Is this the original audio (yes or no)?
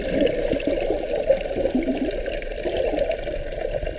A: yes